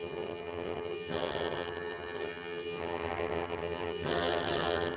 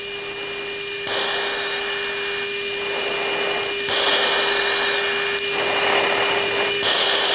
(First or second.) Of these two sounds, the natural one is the second